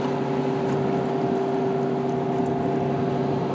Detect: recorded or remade recorded